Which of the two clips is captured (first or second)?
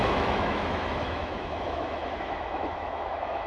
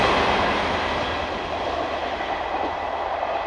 second